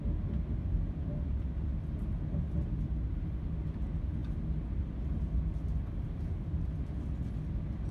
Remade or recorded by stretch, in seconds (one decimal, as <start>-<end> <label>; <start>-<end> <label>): 0.0-7.9 recorded